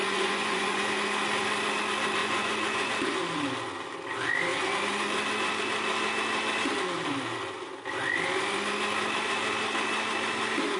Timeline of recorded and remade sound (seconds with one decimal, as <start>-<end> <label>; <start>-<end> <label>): 0.0-0.9 remade; 0.9-2.2 recorded; 2.2-3.0 remade; 3.0-10.8 recorded